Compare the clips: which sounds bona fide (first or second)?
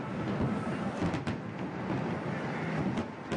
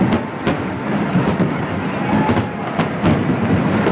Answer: second